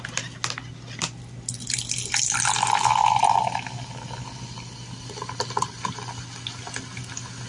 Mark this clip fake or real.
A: real